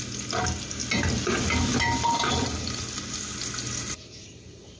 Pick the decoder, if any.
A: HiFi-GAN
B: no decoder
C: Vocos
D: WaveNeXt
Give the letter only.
B